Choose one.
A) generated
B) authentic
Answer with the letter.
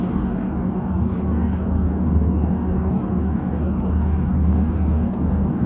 A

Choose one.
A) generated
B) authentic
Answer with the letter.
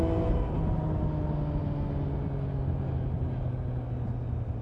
B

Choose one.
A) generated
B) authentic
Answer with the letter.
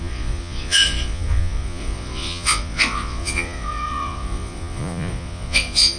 A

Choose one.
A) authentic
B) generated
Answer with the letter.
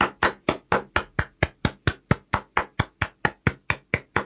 A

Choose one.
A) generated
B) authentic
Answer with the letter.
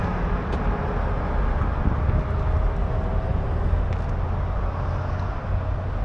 B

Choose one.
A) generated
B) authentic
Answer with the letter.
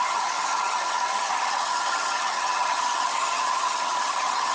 A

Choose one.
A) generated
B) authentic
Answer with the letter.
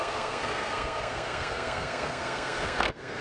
A